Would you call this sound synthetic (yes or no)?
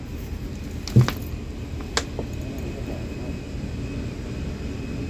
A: no